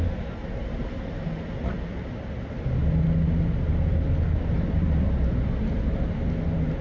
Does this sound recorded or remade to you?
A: recorded